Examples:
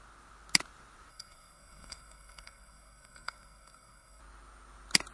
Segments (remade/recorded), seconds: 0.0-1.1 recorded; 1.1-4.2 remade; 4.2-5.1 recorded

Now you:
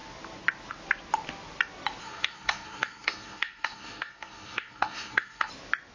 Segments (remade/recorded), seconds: 0.0-2.0 recorded; 2.0-5.5 remade; 5.5-5.9 recorded